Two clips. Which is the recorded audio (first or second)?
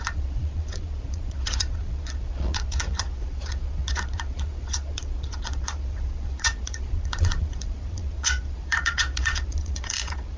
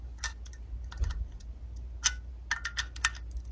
second